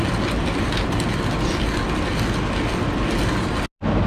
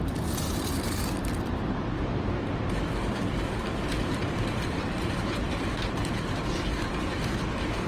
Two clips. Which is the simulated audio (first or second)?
second